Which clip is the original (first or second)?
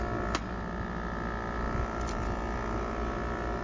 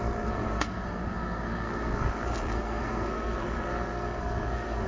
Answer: first